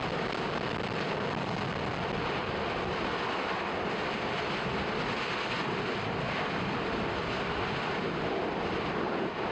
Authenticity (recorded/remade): recorded